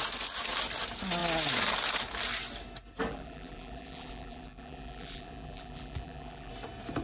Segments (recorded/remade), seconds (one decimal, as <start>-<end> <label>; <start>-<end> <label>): 0.0-3.1 recorded; 3.1-6.5 remade; 6.5-7.0 recorded